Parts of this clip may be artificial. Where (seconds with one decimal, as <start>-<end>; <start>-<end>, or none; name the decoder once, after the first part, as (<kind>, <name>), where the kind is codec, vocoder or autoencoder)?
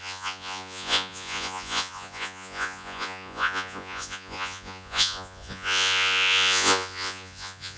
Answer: 0.0-7.8 (vocoder, Vocos)